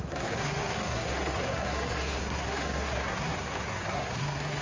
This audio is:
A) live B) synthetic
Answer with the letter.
B